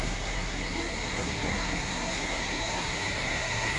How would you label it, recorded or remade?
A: remade